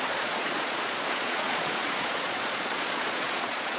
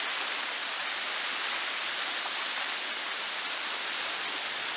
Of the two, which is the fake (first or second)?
first